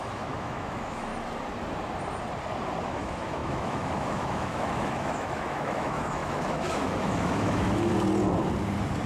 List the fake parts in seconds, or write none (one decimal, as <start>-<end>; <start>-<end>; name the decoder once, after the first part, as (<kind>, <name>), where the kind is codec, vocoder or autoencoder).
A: 0.0-1.1 (autoencoder, DAC-VAE); 2.8-7.9